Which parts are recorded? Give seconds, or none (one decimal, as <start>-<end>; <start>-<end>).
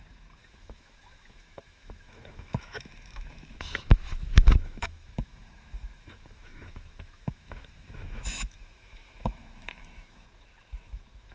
none